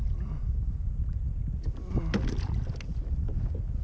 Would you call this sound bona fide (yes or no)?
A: yes